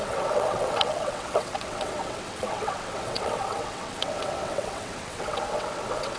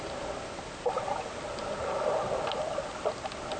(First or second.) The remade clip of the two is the first